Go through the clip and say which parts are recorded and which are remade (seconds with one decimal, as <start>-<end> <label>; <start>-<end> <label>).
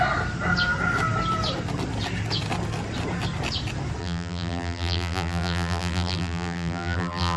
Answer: 0.0-4.0 recorded; 4.0-7.4 remade